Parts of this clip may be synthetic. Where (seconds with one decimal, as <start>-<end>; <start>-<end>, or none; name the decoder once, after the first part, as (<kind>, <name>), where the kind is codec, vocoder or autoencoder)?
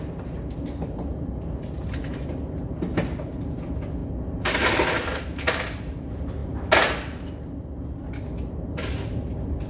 none